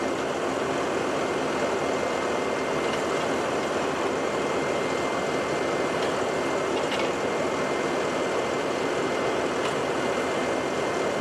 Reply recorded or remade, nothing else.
recorded